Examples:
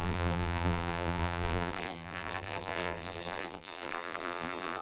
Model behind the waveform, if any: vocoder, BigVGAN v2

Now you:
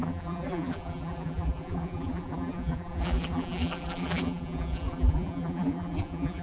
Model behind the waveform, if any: vocoder, BigVGAN v2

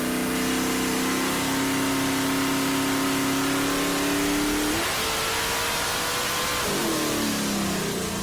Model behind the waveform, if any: none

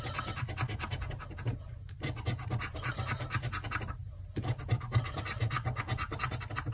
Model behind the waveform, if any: vocoder, BigVGAN v2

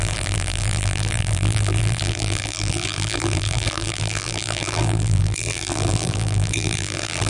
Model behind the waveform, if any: vocoder, BigVGAN v2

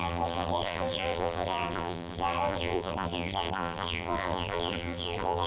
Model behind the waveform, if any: vocoder, BigVGAN v2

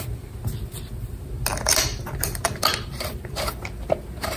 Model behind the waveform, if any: vocoder, BigVGAN v2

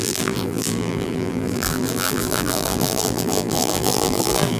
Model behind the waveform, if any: vocoder, BigVGAN v2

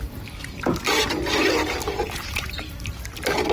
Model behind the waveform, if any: none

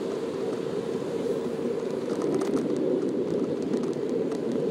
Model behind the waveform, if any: vocoder, BigVGAN v2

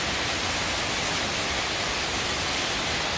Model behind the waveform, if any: vocoder, BigVGAN v2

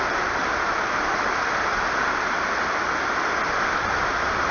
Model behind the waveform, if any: none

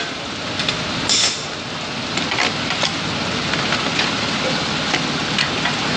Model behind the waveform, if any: none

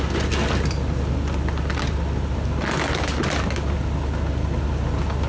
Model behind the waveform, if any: none